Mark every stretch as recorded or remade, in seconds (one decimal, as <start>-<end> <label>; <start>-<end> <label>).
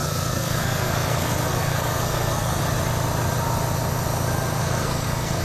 0.0-2.6 remade; 2.6-4.6 recorded; 4.6-5.4 remade